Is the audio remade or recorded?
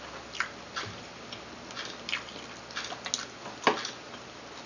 recorded